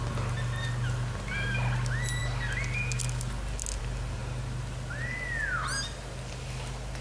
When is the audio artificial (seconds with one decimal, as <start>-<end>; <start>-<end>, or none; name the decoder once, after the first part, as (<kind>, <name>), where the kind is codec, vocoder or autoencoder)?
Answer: none